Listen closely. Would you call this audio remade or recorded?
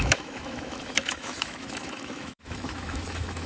remade